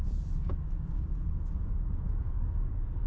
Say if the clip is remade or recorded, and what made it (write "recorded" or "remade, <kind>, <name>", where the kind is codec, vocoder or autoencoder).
remade, vocoder, Vocos